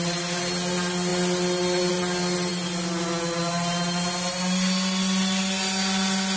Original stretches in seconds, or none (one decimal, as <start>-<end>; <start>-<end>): 0.0-6.4